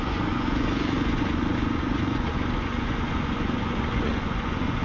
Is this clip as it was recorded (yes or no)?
no